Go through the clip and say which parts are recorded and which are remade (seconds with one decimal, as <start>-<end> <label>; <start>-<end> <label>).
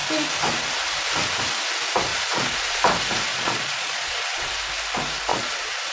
0.0-2.1 recorded; 2.1-2.8 remade; 2.8-3.3 recorded; 3.3-4.5 remade; 4.5-5.3 recorded; 5.3-5.9 remade